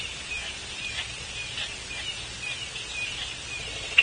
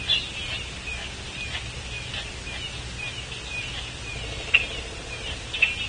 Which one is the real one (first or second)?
second